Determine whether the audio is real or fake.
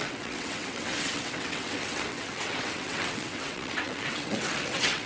fake